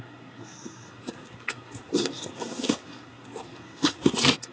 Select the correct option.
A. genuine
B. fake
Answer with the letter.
B